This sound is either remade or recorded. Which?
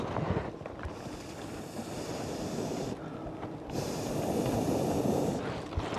recorded